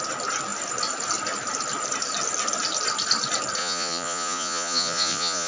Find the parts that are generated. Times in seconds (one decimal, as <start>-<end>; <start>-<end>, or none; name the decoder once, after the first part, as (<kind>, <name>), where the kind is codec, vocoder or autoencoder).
3.6-5.5 (vocoder, Vocos)